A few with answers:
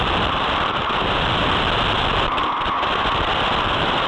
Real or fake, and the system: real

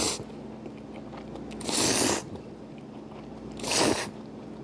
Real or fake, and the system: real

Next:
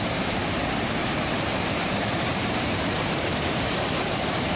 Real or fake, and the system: fake, vocoder, BigVGAN v2